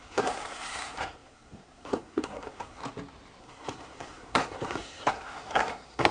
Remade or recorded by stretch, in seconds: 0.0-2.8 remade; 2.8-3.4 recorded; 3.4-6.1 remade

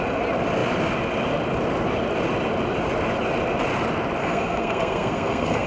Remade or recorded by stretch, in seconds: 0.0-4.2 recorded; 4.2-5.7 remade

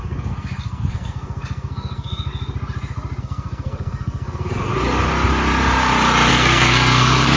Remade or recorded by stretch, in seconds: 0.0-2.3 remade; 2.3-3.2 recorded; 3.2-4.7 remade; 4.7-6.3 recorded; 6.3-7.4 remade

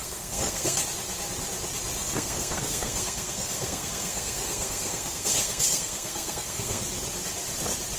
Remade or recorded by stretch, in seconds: 0.0-0.8 remade; 0.8-2.0 recorded; 2.0-6.8 remade; 6.8-8.0 recorded

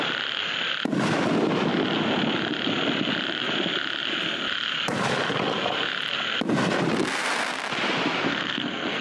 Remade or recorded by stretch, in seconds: 0.0-8.3 recorded; 8.3-9.0 remade

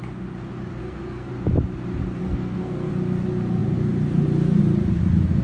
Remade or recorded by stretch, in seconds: 0.0-0.8 recorded; 0.8-1.3 remade; 1.3-2.2 recorded; 2.2-2.9 remade; 2.9-5.4 recorded

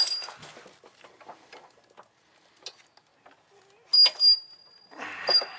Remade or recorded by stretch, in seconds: 0.0-5.6 recorded